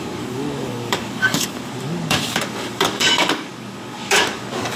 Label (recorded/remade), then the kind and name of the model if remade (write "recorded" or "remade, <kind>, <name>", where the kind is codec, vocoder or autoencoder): remade, codec, DAC